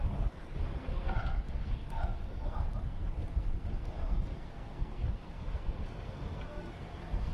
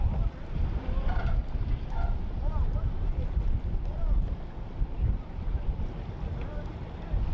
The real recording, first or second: second